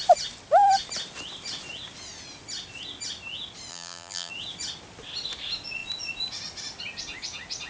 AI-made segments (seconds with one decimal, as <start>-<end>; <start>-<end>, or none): 3.7-4.3